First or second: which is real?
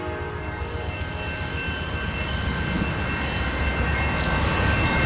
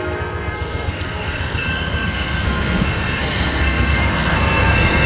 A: first